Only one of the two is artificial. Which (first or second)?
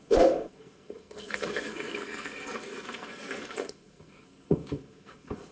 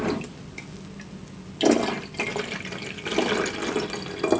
first